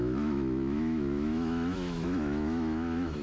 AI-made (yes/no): yes